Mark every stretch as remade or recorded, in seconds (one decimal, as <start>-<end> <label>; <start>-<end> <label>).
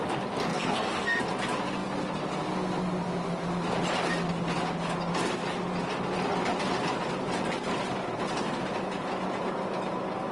0.0-0.5 recorded; 0.5-1.2 remade; 1.2-10.3 recorded